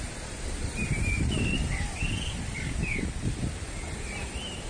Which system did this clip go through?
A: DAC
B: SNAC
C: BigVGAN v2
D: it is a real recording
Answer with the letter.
D